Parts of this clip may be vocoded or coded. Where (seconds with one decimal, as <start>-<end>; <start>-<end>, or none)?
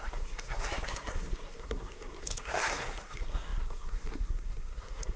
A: 0.0-5.2